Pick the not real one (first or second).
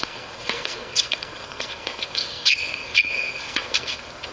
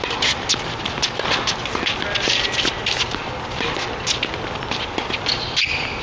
first